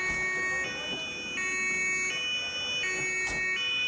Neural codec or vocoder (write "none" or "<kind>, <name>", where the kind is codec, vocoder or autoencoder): none